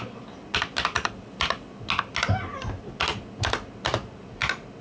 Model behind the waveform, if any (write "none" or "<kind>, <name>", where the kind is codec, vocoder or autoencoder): none